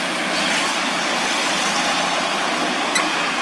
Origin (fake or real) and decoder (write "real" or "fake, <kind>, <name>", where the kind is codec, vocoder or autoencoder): real